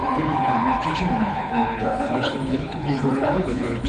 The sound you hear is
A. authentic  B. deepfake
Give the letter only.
B